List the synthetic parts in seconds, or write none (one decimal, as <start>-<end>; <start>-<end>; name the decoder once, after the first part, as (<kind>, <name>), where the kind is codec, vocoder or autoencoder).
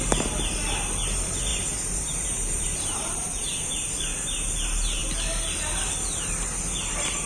1.5-3.7 (vocoder, BigVGAN v2)